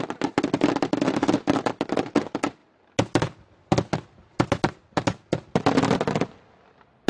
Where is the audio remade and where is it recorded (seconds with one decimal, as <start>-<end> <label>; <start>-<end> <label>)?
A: 0.0-7.1 recorded